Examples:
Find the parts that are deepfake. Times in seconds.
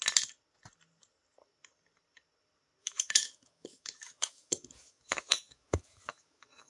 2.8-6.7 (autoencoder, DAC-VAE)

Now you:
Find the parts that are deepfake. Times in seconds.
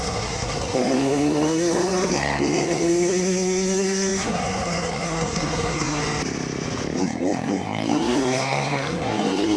0.0-6.0 (codec, SNAC); 7.0-9.6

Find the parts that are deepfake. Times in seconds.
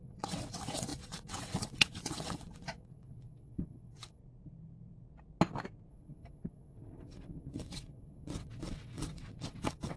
0.0-4.2 (vocoder, WaveNeXt); 5.9-10.0